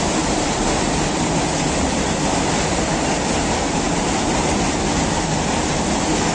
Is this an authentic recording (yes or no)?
yes